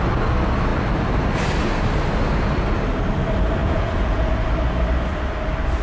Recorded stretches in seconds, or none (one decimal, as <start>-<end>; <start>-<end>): 0.0-3.6; 4.3-5.8